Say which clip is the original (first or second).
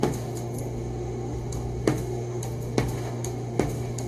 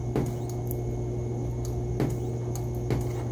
second